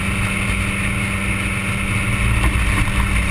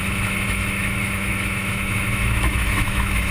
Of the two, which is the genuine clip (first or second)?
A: first